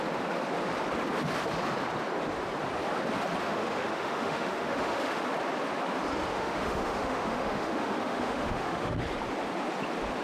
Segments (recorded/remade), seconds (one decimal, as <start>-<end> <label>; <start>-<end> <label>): 0.0-3.4 recorded; 3.4-5.3 remade; 5.3-6.3 recorded; 6.3-9.0 remade; 9.0-10.2 recorded